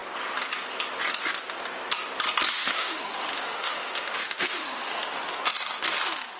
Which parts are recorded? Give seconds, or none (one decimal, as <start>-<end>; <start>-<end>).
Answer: 0.0-2.6; 5.4-6.4